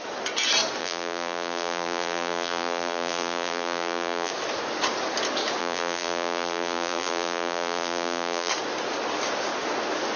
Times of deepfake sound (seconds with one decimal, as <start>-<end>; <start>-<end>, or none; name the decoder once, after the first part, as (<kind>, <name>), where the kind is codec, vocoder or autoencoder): 0.8-4.3 (vocoder, BigVGAN v2); 5.6-8.5

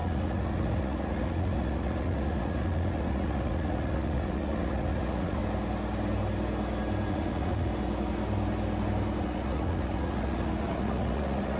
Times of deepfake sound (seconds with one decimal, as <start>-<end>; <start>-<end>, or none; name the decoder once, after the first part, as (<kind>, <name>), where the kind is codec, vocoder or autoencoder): 0.0-5.4 (vocoder, Vocos); 7.1-7.7; 9.2-11.6

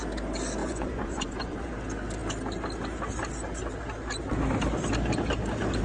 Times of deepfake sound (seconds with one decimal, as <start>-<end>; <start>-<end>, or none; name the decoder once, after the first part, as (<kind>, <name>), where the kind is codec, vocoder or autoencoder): 0.6-1.7 (vocoder, Vocos)

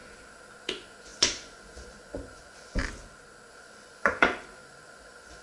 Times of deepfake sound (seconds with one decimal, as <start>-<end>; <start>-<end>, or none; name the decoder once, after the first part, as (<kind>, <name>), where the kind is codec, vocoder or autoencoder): 0.6-2.8 (vocoder, Vocos); 3.5-5.4

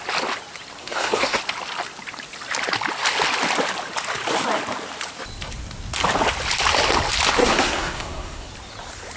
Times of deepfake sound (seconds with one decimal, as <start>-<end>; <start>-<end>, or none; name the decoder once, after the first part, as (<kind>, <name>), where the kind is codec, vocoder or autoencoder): 0.8-1.4 (codec, SNAC); 7.4-8.5

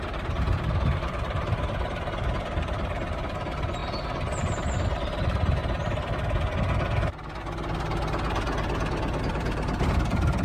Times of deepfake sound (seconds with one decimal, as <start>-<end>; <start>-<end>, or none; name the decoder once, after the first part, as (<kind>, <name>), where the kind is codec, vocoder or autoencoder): 0.0-3.8 (vocoder, BigVGAN v2); 4.4-5.6; 9.2-10.4

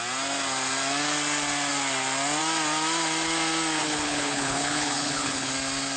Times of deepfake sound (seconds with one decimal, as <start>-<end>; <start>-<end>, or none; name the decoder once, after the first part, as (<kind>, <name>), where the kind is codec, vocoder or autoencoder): 3.8-5.5 (codec, HILCodec)